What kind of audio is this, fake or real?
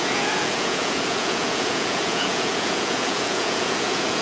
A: fake